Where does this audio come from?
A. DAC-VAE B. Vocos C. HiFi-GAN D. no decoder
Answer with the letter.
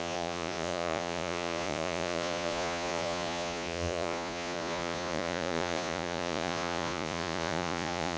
B